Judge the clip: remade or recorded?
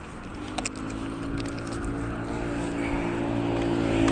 recorded